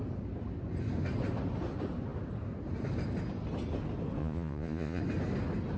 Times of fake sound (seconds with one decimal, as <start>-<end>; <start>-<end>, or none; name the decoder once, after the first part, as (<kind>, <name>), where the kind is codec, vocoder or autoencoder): 4.2-5.0 (vocoder, Vocos)